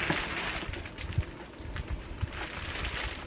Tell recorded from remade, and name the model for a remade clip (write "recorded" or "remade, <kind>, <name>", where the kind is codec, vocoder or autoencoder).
recorded